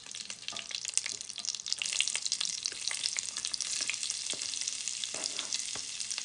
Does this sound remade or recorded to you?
recorded